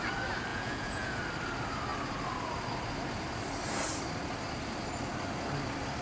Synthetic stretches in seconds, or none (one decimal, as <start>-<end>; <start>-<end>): 0.5-1.2